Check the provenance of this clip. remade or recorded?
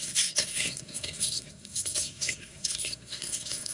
remade